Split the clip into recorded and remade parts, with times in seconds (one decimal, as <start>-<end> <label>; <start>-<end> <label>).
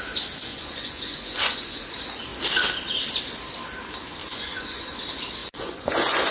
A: 0.0-0.5 recorded; 0.5-1.9 remade; 1.9-4.2 recorded; 4.2-5.0 remade; 5.0-5.4 recorded; 5.4-6.3 remade